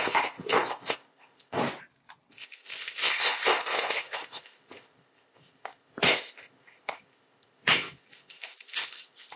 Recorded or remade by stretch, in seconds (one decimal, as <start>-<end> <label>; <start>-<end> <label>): 0.0-1.6 remade; 1.6-2.3 recorded; 2.3-9.4 remade